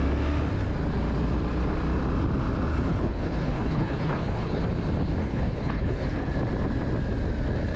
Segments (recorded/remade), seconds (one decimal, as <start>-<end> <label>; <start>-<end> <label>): 0.0-2.7 recorded; 2.7-4.6 remade; 4.6-5.2 recorded; 5.2-6.3 remade; 6.3-7.8 recorded